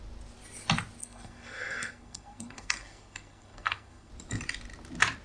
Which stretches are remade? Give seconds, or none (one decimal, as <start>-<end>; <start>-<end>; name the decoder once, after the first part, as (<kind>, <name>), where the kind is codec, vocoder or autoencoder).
1.0-4.1 (codec, SNAC)